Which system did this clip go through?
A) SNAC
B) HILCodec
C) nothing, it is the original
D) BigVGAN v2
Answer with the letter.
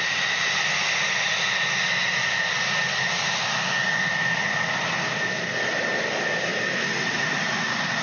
C